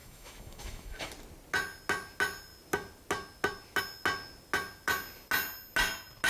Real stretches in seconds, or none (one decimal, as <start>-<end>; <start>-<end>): 1.1-6.3